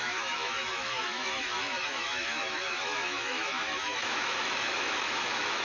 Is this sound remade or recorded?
remade